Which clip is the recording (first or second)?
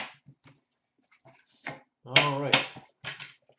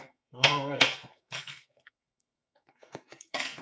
first